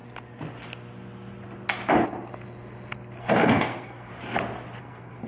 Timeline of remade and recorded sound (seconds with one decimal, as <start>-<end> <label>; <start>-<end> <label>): 0.0-3.2 recorded; 3.2-4.1 remade; 4.1-4.8 recorded; 4.8-5.3 remade